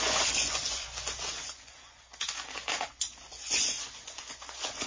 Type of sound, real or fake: fake